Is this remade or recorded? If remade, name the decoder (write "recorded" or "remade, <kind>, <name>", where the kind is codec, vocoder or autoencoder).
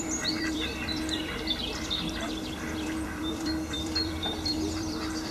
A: remade, vocoder, BigVGAN v2